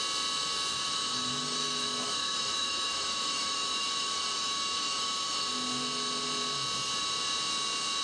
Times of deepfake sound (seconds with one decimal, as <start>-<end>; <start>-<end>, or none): 0.7-5.5